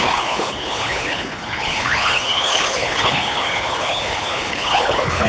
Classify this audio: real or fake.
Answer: fake